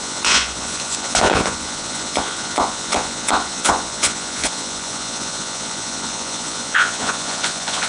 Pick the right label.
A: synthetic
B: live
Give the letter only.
A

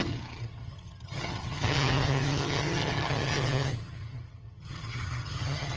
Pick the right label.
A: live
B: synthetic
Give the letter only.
B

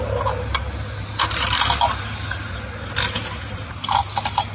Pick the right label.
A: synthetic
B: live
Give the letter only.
B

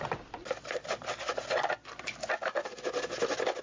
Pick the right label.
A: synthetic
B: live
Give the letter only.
B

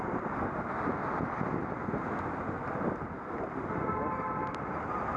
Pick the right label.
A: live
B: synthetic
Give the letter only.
A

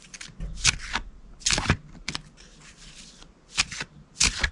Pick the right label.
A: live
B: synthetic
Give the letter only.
A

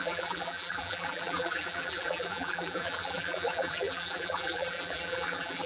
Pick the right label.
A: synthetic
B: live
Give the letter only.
A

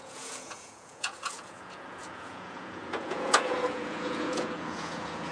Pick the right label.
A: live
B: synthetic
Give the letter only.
B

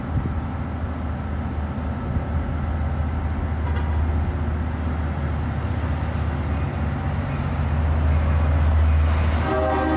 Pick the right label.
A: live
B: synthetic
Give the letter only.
A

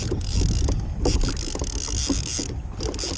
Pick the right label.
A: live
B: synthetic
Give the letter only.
A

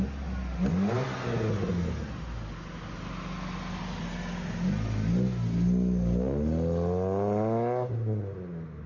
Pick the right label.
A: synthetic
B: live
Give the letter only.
B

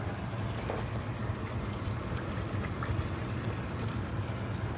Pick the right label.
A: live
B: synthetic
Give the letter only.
A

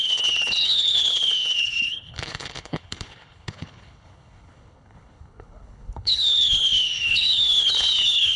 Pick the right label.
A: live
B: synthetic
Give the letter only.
B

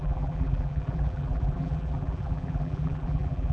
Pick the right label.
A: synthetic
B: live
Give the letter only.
A